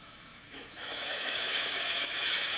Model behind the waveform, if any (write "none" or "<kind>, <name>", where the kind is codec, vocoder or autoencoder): autoencoder, DAC-VAE